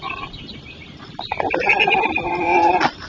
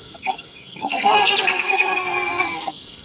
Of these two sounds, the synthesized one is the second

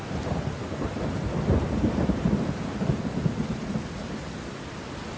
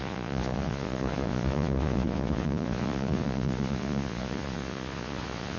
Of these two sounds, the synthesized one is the second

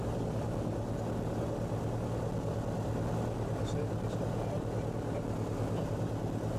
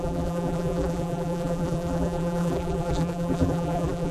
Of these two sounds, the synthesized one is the second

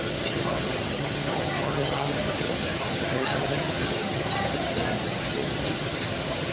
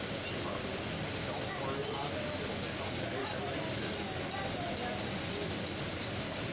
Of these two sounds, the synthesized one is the first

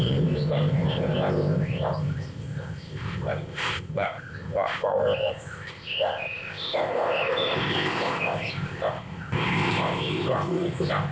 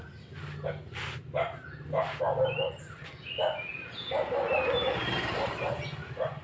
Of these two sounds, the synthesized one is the first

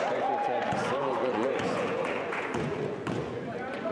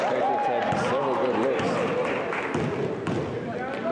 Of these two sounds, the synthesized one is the first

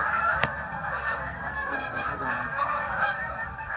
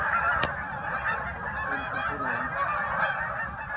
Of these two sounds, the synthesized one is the first